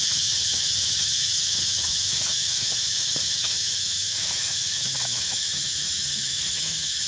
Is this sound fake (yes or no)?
yes